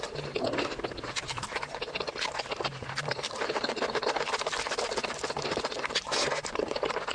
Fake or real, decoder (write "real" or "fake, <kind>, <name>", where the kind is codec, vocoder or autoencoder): real